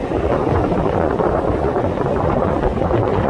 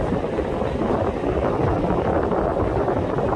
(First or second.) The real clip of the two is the second